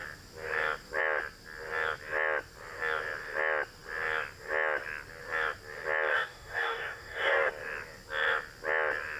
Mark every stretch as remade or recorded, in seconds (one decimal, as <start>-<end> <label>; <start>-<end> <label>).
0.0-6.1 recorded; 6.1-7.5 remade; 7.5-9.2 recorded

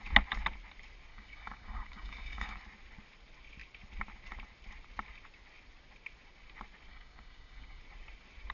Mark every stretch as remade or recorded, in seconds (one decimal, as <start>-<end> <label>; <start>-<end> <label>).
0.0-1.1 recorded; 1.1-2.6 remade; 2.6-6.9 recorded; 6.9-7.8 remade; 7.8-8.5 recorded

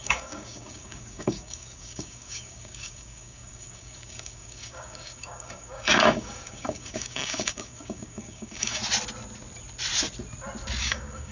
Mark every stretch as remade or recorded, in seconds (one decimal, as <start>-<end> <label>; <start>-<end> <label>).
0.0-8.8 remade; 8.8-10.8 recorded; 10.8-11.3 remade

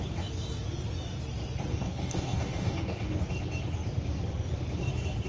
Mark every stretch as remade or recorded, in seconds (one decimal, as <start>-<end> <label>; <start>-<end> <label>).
0.0-1.7 recorded; 1.7-3.2 remade; 3.2-5.3 recorded

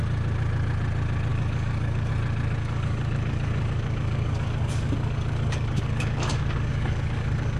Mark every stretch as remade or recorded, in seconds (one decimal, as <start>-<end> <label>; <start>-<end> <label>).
0.0-1.3 recorded; 1.3-2.1 remade; 2.1-2.6 recorded; 2.6-7.6 remade

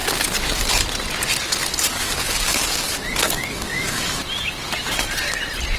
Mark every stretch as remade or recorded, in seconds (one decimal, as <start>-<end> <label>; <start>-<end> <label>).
0.0-1.9 recorded; 1.9-4.2 remade; 4.2-5.8 recorded